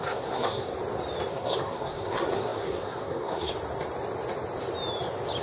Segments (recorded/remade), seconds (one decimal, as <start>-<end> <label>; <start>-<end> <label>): 0.0-0.7 remade; 0.7-1.3 recorded; 1.3-3.5 remade; 3.5-5.4 recorded